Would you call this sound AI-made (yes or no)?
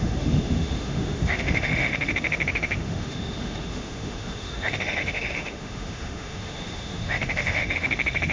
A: yes